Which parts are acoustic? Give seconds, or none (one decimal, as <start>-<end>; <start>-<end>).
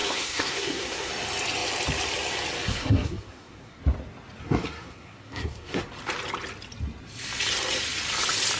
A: 1.1-2.7; 3.8-4.4; 5.8-8.6